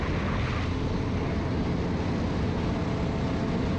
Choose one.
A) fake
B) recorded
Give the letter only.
B